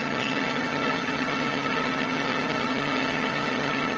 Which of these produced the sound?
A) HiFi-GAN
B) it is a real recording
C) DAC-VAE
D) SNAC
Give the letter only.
A